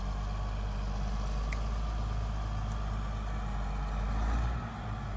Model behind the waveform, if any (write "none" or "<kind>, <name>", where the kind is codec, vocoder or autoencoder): none